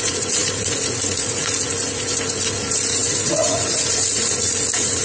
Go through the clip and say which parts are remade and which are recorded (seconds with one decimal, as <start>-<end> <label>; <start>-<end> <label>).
0.0-5.0 remade